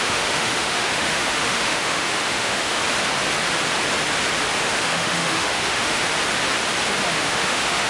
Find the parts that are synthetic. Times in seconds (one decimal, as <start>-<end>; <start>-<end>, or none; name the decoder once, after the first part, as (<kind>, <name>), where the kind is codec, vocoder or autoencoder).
0.0-2.8 (autoencoder, DAC-VAE); 4.6-6.0; 7.1-7.9